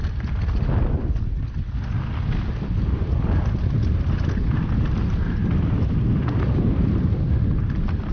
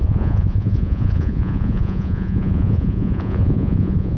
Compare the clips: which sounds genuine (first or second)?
first